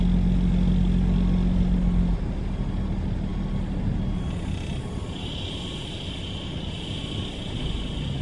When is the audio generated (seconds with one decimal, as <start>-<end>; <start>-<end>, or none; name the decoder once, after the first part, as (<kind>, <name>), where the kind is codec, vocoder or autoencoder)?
none